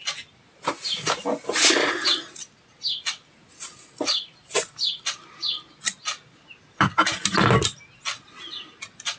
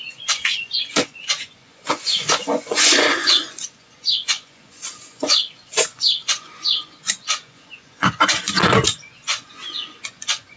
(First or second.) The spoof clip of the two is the second